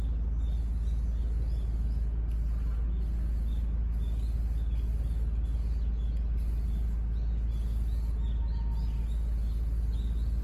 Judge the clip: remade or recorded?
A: recorded